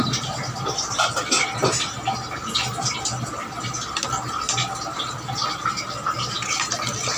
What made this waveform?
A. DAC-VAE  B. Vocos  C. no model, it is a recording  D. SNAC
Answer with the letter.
C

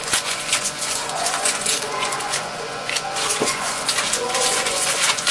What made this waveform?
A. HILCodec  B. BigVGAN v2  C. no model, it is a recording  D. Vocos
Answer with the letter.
D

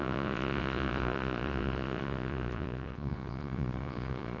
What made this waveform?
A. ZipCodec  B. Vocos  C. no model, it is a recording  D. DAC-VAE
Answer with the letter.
B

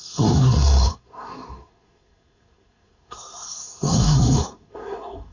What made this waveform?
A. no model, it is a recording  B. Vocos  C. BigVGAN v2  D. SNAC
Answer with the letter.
D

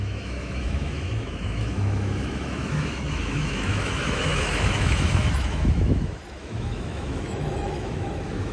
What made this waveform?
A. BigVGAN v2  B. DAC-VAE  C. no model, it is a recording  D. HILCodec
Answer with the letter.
B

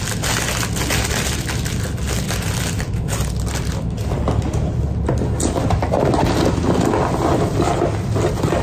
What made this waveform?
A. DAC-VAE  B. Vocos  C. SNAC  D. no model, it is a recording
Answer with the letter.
D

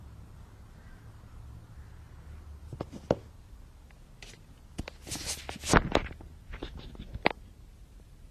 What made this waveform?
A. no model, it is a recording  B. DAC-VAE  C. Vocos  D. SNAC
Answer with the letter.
A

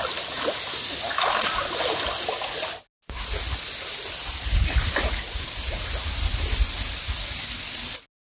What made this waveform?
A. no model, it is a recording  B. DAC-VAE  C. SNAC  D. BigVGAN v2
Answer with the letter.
A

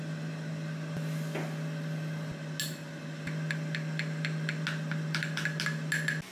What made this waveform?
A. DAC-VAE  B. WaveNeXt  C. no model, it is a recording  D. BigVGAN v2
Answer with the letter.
C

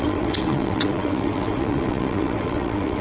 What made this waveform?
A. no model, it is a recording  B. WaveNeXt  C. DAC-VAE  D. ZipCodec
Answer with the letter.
B